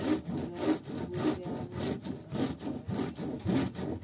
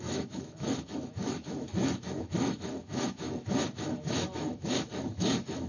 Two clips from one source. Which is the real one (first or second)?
first